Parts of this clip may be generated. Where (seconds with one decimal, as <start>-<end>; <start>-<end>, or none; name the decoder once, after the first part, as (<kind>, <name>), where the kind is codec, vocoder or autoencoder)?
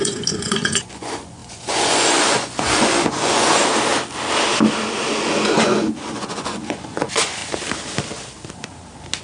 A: 0.0-3.6 (vocoder, Vocos); 5.2-7.4